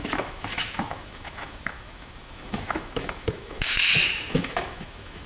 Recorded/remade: remade